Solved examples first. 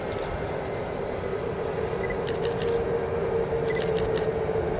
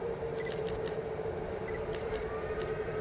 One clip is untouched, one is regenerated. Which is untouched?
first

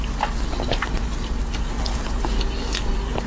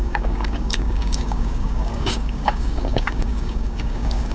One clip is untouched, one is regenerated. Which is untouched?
first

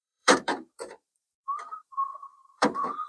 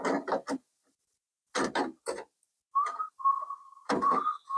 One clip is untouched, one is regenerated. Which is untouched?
second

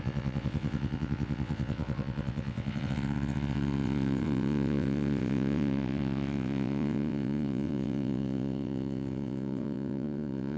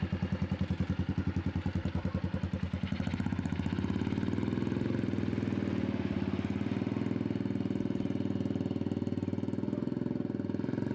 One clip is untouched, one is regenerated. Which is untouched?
second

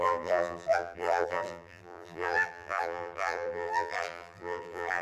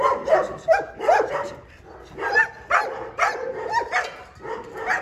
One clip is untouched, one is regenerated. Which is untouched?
second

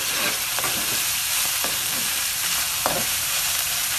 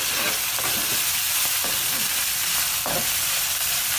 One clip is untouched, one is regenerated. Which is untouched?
second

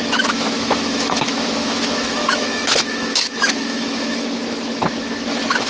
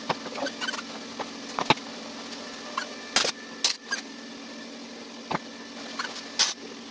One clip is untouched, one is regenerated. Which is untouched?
second